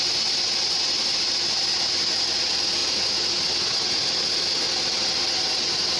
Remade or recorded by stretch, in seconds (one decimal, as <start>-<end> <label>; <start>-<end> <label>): 0.0-6.0 recorded